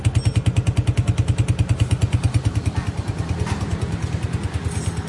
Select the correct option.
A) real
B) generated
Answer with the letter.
A